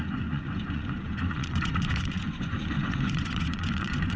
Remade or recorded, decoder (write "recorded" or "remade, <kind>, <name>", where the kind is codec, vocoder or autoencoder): remade, vocoder, Vocos